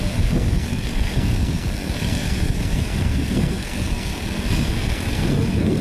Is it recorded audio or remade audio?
remade